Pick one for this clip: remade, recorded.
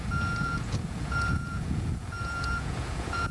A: remade